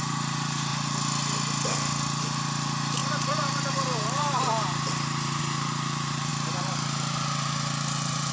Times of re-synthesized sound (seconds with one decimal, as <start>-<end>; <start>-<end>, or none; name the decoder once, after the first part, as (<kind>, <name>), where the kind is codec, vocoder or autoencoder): 0.0-0.7 (vocoder, BigVGAN v2); 2.2-8.3